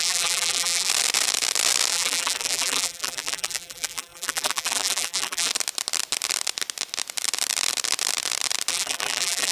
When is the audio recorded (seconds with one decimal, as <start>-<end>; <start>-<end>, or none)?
0.9-1.9; 5.5-8.7